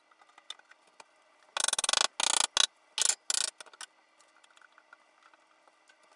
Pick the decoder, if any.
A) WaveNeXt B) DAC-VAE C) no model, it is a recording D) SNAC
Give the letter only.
C